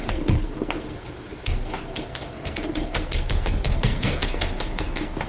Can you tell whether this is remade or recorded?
remade